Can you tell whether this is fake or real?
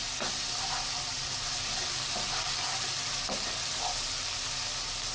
real